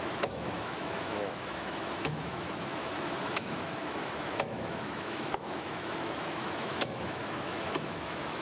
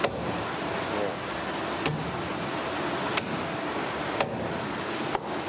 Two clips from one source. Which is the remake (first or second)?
first